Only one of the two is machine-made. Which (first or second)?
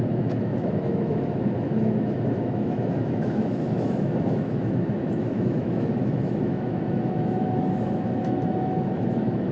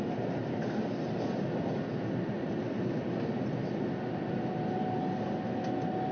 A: first